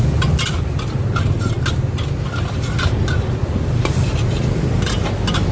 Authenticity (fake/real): real